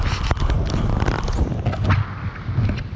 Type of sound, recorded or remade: recorded